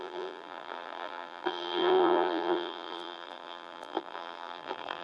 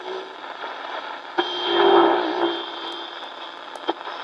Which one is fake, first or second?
first